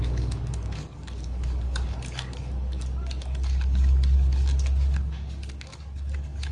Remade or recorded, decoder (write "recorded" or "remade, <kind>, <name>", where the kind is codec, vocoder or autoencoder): remade, codec, DAC